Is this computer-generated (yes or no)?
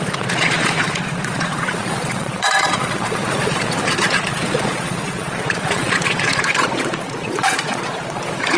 yes